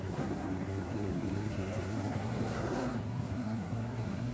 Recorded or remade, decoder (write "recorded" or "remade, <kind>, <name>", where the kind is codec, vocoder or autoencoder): remade, codec, SNAC